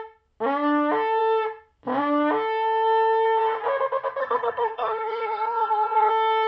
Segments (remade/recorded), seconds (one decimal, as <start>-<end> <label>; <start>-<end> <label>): 0.0-4.2 recorded; 4.2-6.1 remade; 6.1-6.5 recorded